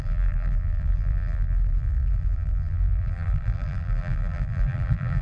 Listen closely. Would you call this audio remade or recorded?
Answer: remade